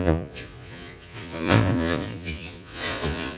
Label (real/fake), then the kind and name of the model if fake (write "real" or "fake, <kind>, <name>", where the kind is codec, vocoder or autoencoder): fake, vocoder, Vocos